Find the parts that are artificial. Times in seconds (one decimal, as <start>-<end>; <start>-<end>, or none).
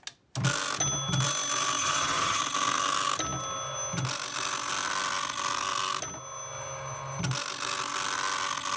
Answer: 1.8-2.4